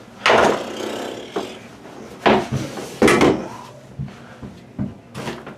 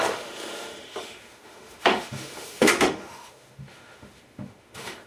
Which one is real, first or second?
first